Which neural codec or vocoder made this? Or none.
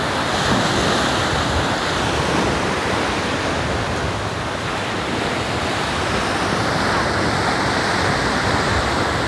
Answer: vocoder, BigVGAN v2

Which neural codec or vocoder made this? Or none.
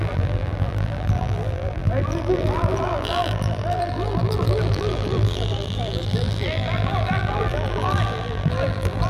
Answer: vocoder, BigVGAN v2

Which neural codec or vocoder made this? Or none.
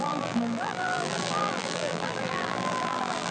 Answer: vocoder, BigVGAN v2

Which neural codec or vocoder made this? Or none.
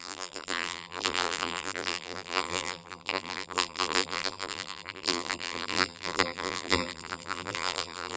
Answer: vocoder, BigVGAN v2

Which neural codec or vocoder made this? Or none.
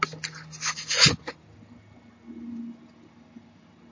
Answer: none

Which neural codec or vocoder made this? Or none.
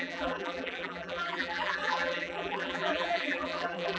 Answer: vocoder, BigVGAN v2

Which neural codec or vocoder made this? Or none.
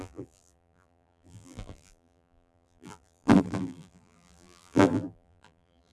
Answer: vocoder, BigVGAN v2